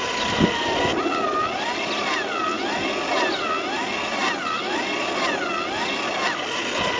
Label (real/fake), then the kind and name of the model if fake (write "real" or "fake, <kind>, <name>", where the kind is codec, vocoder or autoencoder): real